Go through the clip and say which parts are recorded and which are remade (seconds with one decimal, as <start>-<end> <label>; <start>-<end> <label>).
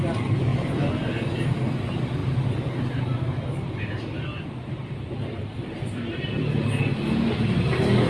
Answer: 0.0-4.3 recorded; 4.3-6.3 remade; 6.3-8.1 recorded